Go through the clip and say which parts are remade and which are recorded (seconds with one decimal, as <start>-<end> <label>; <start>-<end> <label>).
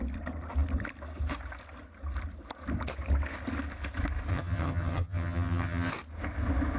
0.0-4.3 recorded; 4.3-5.9 remade; 5.9-6.8 recorded